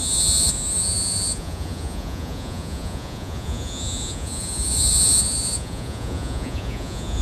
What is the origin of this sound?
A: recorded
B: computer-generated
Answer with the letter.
B